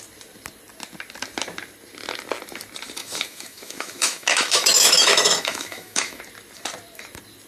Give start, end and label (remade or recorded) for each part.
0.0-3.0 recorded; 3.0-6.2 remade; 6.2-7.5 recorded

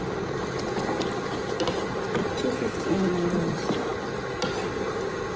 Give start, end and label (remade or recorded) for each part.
0.0-5.4 recorded